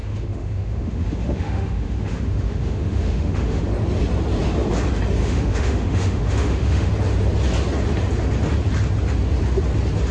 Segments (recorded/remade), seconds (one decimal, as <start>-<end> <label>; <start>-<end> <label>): 0.0-3.6 remade; 3.6-5.2 recorded; 5.2-6.9 remade; 6.9-10.1 recorded